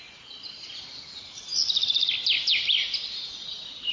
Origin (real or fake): real